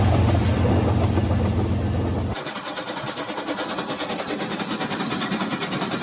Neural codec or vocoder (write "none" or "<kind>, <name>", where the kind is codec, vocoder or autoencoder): none